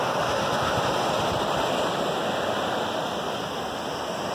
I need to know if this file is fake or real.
real